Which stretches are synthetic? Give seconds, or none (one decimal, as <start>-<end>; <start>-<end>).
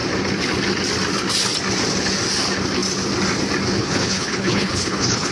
3.8-5.3